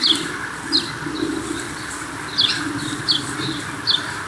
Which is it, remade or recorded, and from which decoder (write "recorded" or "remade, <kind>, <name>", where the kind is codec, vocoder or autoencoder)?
recorded